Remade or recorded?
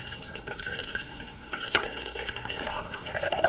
remade